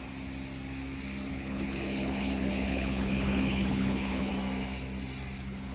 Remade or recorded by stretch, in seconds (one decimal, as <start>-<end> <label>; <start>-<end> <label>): 0.0-1.3 recorded; 1.3-4.3 remade; 4.3-5.7 recorded